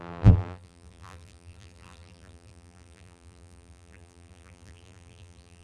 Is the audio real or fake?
fake